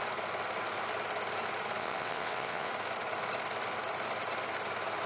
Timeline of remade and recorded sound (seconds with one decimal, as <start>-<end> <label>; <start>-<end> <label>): 0.0-1.8 recorded; 1.8-2.7 remade; 2.7-5.1 recorded